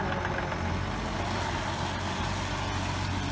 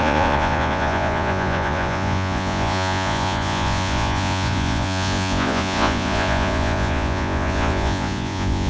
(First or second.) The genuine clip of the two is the first